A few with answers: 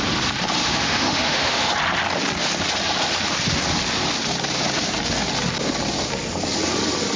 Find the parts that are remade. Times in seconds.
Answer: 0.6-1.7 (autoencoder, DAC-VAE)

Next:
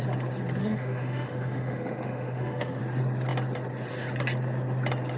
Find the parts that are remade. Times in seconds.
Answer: 0.6-2.8 (autoencoder, DAC-VAE)

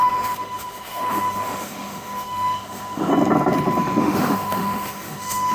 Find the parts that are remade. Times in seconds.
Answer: 0.0-3.1 (autoencoder, DAC-VAE); 4.0-5.5

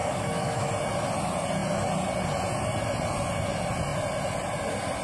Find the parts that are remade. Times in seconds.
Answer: 0.0-0.7 (autoencoder, DAC-VAE)

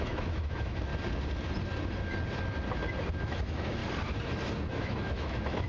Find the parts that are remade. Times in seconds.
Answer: 0.0-0.9 (autoencoder, DAC-VAE); 3.2-3.8; 4.7-5.7

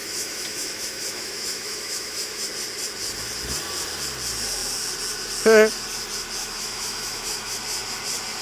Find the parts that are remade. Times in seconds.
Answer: 0.0-2.5 (autoencoder, DAC-VAE); 6.4-7.6

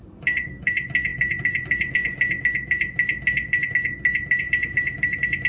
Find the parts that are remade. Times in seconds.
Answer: none

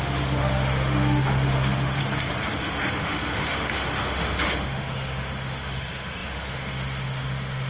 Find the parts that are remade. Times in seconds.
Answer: 0.0-2.0 (autoencoder, DAC-VAE); 2.5-7.7